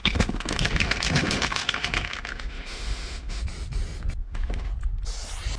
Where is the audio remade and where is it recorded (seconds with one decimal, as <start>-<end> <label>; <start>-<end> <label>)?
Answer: 0.0-3.4 remade; 3.4-4.2 recorded; 4.2-4.7 remade; 4.7-5.6 recorded